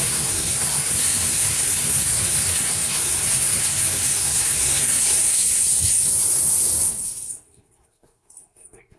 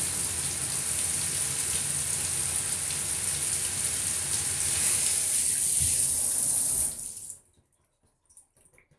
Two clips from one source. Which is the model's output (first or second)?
first